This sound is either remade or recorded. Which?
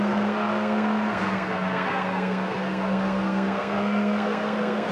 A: remade